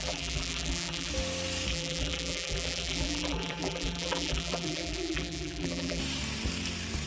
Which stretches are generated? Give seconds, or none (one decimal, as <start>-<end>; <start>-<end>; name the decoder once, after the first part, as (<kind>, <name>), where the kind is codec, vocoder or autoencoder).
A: 0.0-1.1 (vocoder, BigVGAN v2); 1.7-6.0